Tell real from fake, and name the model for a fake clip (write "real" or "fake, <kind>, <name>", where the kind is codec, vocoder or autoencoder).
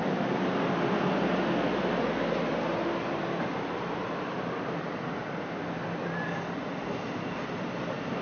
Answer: real